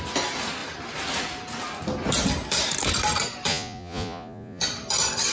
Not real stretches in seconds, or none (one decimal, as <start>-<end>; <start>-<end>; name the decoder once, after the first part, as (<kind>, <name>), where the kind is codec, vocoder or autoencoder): 3.5-4.6 (vocoder, Vocos)